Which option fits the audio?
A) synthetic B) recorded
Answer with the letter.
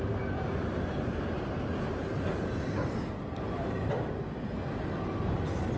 B